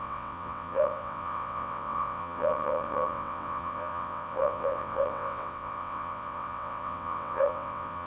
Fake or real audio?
fake